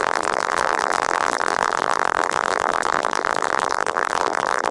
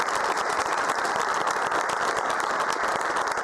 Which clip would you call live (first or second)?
second